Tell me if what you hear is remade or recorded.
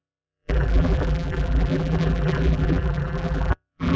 remade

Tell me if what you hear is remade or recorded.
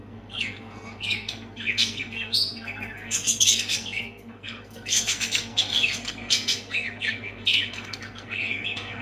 remade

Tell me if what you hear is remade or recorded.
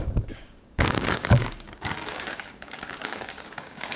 remade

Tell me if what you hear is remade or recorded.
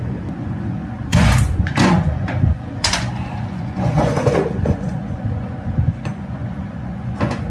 remade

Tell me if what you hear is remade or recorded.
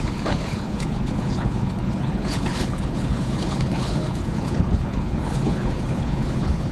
remade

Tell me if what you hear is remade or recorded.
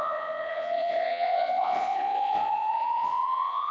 remade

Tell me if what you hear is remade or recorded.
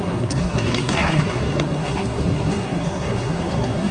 remade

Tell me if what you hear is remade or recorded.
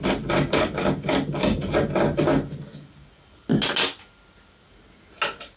recorded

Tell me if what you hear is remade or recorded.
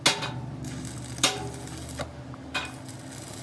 recorded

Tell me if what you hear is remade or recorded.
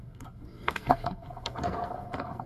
remade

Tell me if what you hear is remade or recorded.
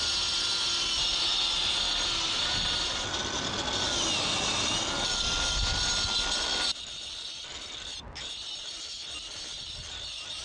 recorded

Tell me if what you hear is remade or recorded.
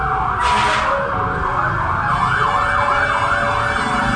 recorded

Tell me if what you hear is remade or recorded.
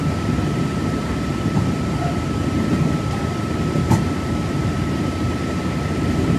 remade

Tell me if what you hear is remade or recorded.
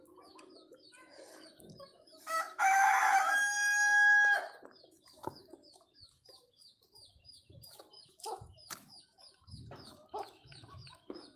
remade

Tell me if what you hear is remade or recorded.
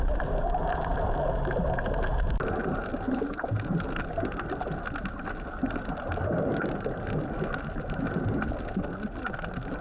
recorded